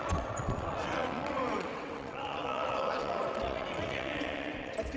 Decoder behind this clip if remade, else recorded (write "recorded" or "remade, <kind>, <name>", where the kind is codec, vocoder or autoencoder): remade, vocoder, WaveNeXt